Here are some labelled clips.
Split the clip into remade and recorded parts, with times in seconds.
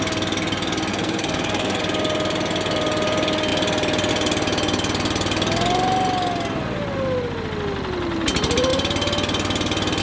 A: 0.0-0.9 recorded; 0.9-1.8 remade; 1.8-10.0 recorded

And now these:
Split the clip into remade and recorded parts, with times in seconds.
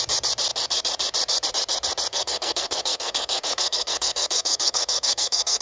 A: 0.0-2.1 recorded; 2.1-5.6 remade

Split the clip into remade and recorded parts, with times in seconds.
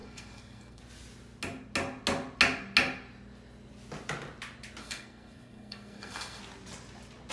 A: 0.0-0.8 remade; 0.8-4.8 recorded; 4.8-6.4 remade; 6.4-7.3 recorded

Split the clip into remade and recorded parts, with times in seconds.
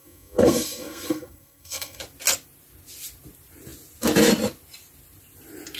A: 0.0-2.0 remade; 2.0-5.8 recorded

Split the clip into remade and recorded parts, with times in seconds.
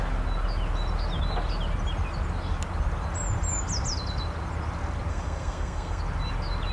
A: 0.0-5.1 recorded; 5.1-6.0 remade; 6.0-6.7 recorded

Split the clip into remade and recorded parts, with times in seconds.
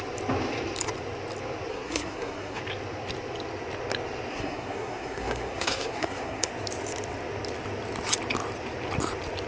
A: 0.0-1.7 recorded; 1.7-2.6 remade; 2.6-4.3 recorded; 4.3-6.5 remade; 6.5-9.5 recorded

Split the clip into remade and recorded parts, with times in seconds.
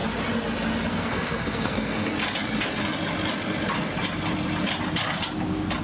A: 0.0-0.9 recorded; 0.9-2.1 remade; 2.1-5.8 recorded